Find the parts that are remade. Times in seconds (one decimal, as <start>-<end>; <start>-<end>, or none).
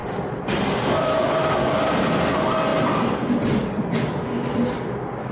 0.0-2.2; 2.7-4.3